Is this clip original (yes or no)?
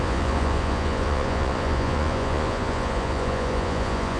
no